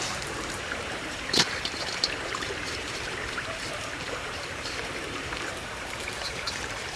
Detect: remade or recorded remade